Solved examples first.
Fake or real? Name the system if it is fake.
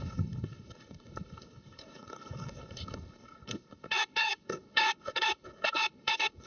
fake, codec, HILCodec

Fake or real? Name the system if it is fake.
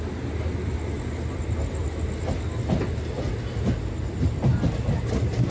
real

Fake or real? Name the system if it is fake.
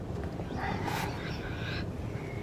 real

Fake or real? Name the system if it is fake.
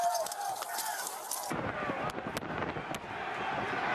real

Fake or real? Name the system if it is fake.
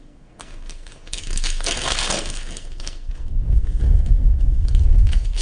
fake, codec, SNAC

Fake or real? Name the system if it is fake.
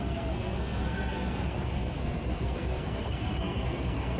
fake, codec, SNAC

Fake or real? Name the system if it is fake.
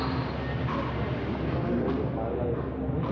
real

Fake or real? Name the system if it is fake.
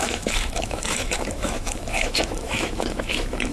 fake, autoencoder, DAC-VAE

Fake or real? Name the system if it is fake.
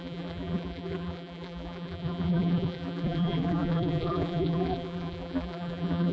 fake, vocoder, BigVGAN v2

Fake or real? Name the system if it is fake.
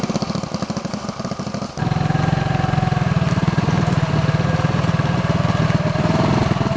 real